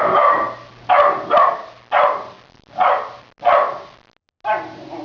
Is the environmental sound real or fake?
real